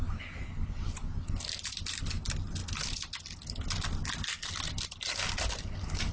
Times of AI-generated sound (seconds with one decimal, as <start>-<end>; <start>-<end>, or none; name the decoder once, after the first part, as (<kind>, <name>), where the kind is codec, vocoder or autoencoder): none